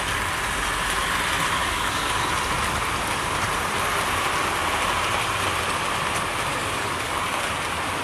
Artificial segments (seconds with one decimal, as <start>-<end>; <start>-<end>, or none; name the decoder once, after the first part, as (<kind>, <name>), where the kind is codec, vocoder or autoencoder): 1.6-2.2 (codec, DAC); 6.5-7.4